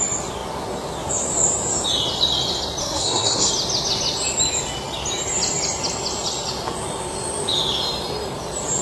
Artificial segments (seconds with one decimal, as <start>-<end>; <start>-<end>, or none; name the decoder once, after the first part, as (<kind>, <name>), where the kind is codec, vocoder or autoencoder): 2.8-3.5 (codec, SNAC)